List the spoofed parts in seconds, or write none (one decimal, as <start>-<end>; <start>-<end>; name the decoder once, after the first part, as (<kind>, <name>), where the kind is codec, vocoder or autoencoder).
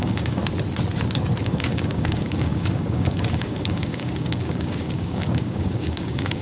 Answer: 0.0-0.4 (codec, DAC); 1.4-6.4